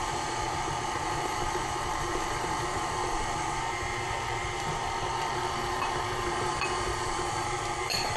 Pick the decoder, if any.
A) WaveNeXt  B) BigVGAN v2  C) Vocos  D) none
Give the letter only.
B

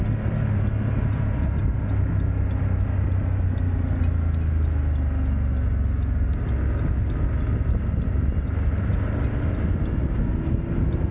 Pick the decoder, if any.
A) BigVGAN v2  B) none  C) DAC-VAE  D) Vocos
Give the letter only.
B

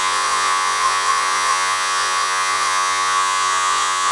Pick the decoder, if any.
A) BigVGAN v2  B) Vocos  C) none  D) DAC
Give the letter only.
B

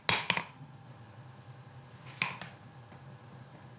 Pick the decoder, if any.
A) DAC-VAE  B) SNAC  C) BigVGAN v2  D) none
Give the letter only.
D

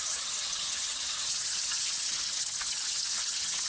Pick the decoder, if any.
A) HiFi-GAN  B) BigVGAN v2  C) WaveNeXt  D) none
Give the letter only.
A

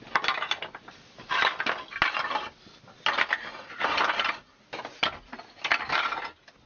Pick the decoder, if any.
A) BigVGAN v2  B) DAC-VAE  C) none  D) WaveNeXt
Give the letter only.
C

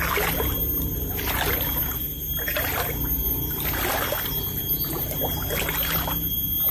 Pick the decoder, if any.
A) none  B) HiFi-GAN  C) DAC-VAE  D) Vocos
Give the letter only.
A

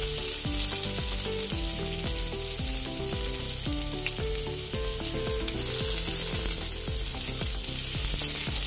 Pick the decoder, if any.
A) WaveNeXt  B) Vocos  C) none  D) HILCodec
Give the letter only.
C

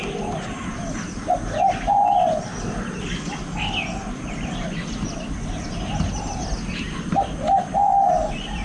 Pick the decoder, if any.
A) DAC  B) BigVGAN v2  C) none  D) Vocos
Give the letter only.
C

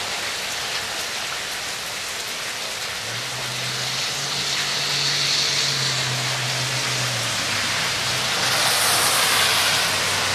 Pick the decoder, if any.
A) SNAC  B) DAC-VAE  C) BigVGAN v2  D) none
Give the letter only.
D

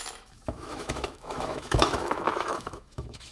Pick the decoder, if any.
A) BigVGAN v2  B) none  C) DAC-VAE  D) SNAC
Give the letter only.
C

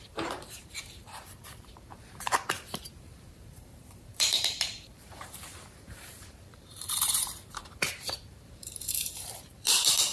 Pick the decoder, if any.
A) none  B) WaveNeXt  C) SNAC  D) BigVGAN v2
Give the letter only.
D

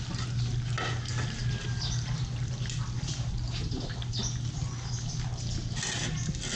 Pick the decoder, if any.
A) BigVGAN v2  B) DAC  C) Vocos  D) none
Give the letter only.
D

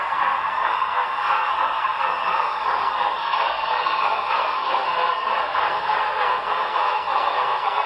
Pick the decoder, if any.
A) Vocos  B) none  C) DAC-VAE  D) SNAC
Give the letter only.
D